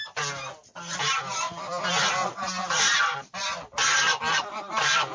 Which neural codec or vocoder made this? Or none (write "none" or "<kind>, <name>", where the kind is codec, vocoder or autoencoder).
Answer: none